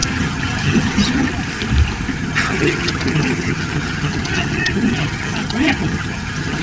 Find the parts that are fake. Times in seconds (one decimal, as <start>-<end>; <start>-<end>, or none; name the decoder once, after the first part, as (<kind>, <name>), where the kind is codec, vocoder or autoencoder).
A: 0.0-1.3 (vocoder, HiFi-GAN); 2.2-6.6

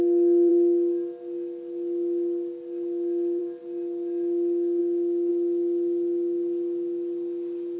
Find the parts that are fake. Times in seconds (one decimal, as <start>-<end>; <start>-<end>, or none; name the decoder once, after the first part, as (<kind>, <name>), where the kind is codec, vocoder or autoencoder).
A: none

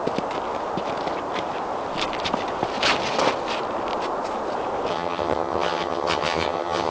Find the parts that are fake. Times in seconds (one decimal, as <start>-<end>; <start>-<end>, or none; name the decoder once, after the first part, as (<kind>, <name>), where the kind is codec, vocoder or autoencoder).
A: 4.9-6.9 (vocoder, HiFi-GAN)